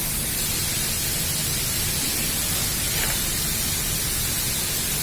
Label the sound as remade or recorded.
recorded